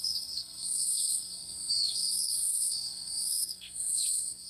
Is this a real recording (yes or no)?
no